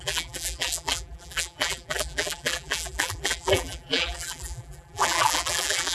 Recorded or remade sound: remade